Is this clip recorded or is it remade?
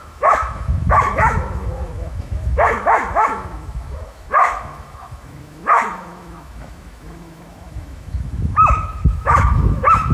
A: remade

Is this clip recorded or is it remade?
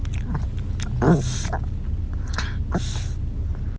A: recorded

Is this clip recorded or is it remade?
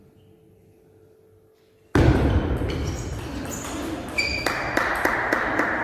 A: recorded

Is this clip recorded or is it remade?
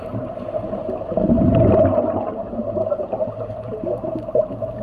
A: remade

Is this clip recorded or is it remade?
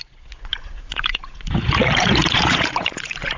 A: remade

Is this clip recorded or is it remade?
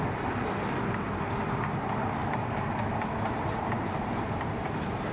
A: recorded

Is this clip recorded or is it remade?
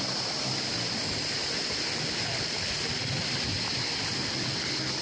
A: recorded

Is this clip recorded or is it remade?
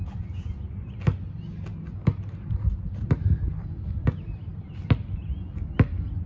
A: recorded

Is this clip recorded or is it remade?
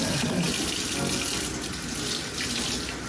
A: recorded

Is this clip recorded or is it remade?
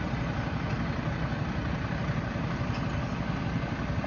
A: recorded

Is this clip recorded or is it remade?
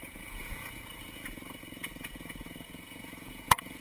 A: remade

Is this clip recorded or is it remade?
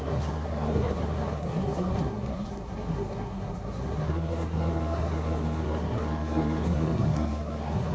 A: remade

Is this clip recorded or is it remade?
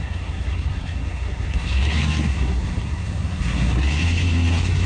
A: remade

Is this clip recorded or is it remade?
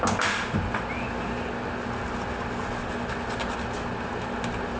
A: recorded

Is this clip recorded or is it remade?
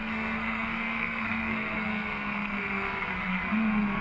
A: remade